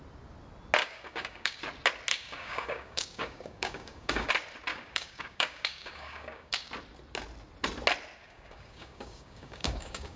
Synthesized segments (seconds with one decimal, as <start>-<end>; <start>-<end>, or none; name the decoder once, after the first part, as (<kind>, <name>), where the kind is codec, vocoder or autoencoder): 0.8-1.6 (codec, DAC); 2.1-4.3; 4.7-6.7; 8.2-10.2